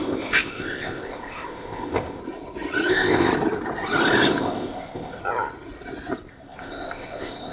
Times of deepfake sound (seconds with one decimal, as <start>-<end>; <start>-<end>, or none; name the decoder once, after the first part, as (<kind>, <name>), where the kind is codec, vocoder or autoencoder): 0.0-2.2 (codec, ZipCodec); 2.9-3.3; 4.4-5.2; 6.3-7.5

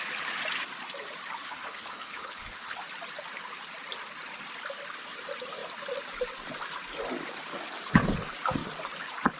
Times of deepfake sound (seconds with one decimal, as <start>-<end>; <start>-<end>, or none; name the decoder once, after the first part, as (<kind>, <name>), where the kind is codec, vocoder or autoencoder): 1.4-2.8 (codec, HILCodec)

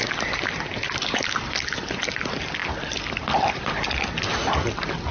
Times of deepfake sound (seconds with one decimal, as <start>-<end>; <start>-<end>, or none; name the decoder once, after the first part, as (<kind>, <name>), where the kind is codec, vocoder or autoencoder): none

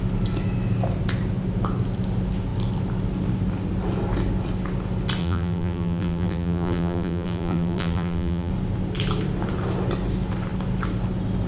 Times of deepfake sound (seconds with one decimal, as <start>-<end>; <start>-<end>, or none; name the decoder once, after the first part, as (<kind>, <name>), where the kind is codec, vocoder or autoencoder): 5.2-8.5 (vocoder, BigVGAN v2)

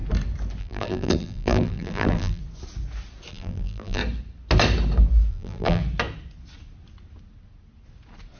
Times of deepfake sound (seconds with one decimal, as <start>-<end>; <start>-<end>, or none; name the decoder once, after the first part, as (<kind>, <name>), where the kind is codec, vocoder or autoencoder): 0.6-2.4 (vocoder, BigVGAN v2); 3.3-4.0; 5.3-5.8

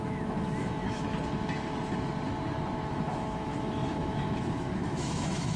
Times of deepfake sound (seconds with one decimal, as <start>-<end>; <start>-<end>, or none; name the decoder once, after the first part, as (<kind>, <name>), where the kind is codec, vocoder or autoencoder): 0.0-1.1 (autoencoder, DAC-VAE); 2.9-5.6